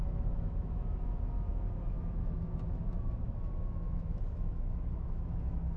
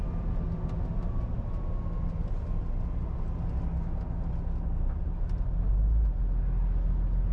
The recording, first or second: second